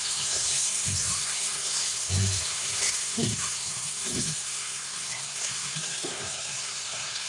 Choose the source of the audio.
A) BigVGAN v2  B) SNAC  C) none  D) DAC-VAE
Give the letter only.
B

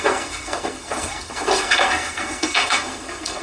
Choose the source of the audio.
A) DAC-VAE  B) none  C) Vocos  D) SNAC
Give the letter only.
D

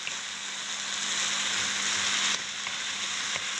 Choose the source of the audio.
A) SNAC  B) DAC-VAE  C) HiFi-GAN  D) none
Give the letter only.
D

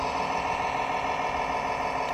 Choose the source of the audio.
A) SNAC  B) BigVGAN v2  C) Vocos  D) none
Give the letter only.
D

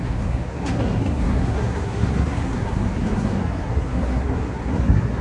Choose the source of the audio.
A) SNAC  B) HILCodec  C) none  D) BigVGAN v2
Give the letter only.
A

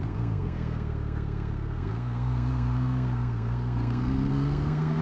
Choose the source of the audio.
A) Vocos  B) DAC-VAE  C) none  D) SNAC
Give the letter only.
D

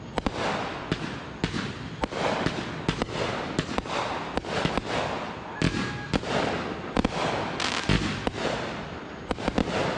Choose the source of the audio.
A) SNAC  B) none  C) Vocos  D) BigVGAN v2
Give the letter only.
B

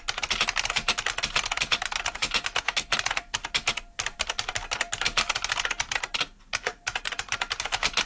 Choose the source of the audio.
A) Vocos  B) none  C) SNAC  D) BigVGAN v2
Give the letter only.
B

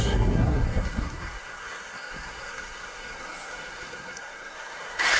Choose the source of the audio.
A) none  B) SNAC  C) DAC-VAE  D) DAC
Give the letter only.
B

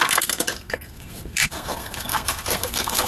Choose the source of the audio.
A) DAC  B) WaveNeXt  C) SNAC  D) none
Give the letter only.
C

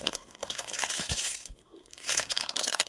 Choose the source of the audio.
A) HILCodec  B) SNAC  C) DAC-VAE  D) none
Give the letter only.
B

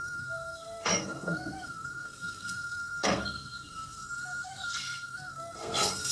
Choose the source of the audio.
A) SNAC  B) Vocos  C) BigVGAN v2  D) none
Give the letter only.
A